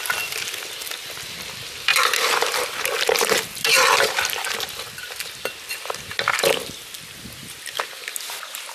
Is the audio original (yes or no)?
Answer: yes